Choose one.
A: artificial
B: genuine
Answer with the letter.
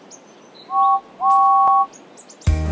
B